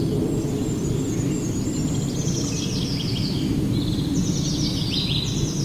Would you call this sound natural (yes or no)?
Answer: yes